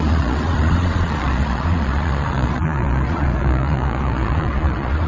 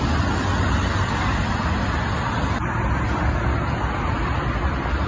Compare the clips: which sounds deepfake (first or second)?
first